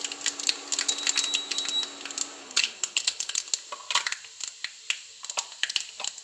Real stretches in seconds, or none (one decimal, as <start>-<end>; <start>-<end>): 0.0-2.4; 3.5-6.2